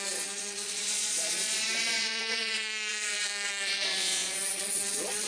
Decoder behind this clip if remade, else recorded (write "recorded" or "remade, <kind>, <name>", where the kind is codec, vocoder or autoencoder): remade, vocoder, Vocos